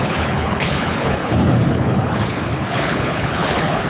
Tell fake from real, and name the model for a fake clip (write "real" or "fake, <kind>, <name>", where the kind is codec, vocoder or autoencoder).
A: fake, codec, HILCodec